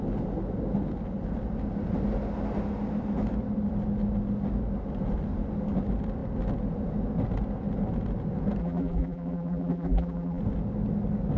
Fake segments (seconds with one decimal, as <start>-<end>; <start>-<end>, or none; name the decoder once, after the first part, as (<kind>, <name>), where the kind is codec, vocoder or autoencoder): 8.6-10.4 (vocoder, BigVGAN v2)